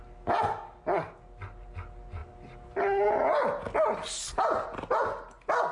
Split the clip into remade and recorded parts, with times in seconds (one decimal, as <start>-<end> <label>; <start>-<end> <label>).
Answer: 0.0-5.7 recorded